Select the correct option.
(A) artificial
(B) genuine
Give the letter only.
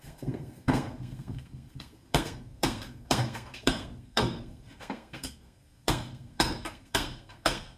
A